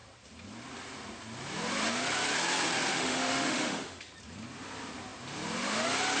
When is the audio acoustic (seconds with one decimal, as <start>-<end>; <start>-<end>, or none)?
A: 0.0-2.9; 4.0-6.2